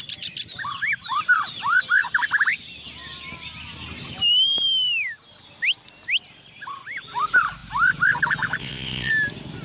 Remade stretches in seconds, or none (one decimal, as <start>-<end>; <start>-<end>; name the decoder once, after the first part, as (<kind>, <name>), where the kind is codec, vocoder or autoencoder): 8.6-9.1 (vocoder, WaveNeXt)